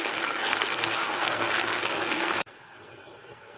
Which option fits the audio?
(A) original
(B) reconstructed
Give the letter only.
B